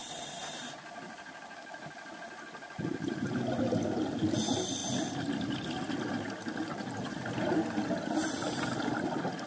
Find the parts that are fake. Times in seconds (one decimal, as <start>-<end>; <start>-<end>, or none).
none